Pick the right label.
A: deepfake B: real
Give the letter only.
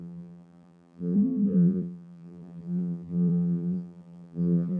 A